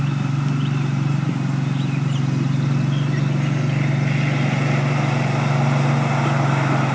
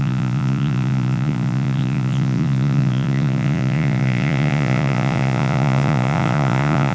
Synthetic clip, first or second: second